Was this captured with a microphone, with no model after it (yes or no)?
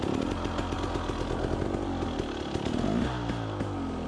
yes